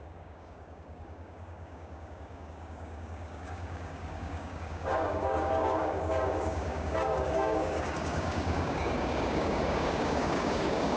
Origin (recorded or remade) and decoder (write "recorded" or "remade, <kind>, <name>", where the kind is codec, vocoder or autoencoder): remade, codec, DAC